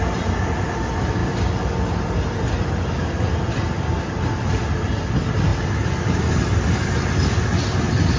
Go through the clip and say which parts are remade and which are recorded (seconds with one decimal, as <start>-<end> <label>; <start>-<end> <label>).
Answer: 0.0-8.2 recorded